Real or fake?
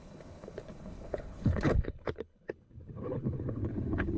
fake